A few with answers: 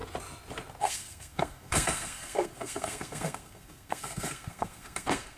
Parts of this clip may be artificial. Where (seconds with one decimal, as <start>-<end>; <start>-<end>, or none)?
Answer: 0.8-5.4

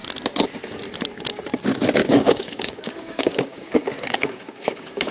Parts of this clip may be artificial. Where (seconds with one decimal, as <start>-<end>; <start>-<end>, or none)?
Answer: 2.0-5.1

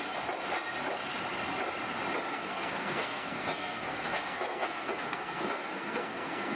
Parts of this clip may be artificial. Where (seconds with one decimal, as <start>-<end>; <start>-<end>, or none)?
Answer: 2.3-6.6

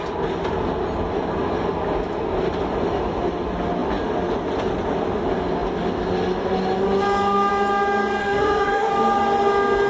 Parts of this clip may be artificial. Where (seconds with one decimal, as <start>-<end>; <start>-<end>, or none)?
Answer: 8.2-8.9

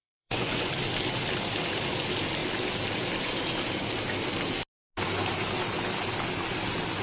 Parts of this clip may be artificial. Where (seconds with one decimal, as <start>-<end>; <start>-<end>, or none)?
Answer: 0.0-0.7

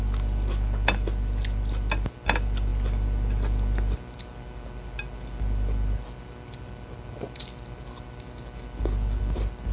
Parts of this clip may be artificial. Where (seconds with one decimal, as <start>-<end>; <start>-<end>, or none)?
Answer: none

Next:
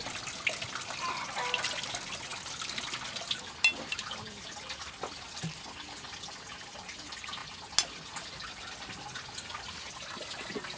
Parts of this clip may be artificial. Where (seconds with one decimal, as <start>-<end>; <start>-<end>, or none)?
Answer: none